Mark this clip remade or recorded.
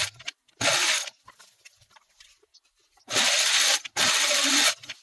remade